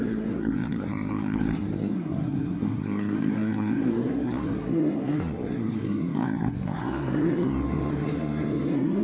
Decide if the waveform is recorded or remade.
remade